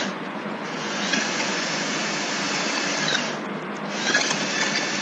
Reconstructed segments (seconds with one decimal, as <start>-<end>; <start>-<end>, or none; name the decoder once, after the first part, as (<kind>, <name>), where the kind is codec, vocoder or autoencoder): 0.0-2.0 (vocoder, Vocos)